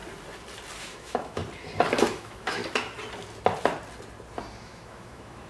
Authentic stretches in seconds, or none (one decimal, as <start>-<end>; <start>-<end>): 0.0-0.8; 1.4-2.0; 2.6-4.6